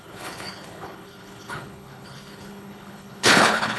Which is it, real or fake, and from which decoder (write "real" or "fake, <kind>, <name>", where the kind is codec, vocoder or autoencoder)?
fake, codec, HILCodec